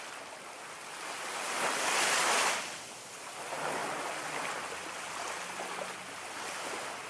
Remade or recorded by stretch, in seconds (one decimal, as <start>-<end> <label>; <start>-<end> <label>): 0.0-7.1 recorded

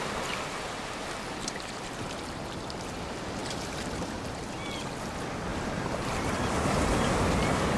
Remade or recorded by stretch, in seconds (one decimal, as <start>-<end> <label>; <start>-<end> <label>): 0.0-5.5 recorded; 5.5-7.8 remade

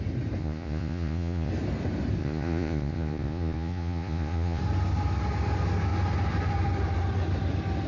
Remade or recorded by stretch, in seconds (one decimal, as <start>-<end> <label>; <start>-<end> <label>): 0.0-0.4 recorded; 0.4-1.5 remade; 1.5-2.2 recorded; 2.2-4.6 remade; 4.6-7.9 recorded

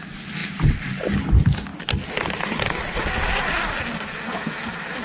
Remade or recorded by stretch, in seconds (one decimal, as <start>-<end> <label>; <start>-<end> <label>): 0.0-5.0 recorded